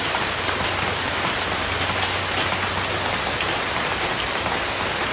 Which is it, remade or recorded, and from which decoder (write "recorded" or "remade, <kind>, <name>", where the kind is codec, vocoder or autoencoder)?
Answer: recorded